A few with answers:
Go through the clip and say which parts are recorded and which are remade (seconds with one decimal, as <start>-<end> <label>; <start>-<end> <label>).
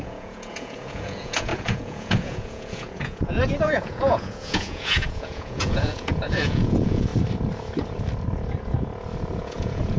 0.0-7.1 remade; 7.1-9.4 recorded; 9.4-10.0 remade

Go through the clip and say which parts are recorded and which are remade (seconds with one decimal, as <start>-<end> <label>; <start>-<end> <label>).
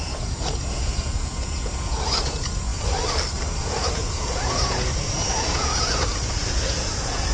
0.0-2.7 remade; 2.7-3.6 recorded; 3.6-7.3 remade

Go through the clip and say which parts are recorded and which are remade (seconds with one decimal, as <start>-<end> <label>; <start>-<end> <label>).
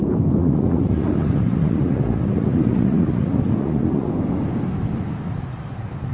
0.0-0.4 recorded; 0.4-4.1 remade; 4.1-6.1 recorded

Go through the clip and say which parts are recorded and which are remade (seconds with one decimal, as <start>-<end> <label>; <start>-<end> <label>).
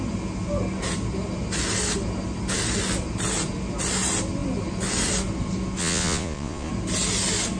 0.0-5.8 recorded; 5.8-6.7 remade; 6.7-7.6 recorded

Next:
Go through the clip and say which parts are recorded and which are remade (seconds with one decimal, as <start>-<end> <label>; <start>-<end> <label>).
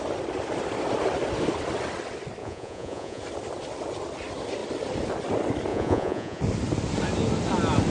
0.0-2.4 recorded; 2.4-3.2 remade; 3.2-5.7 recorded; 5.7-6.4 remade; 6.4-7.9 recorded